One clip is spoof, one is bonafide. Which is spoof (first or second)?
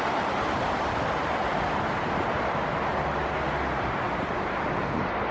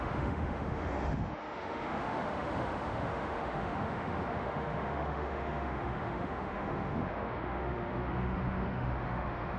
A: second